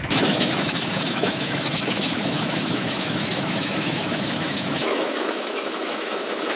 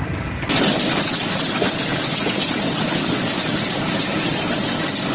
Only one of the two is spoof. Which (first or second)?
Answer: first